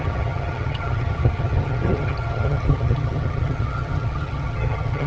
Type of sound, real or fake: fake